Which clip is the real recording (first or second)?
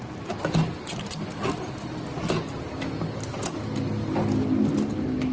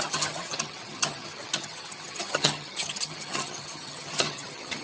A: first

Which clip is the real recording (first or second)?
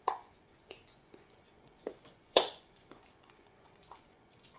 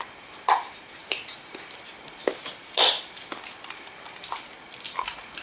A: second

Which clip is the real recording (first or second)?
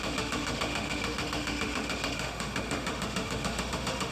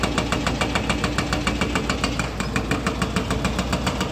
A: second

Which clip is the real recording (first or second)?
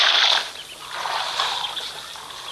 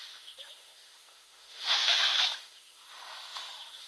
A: first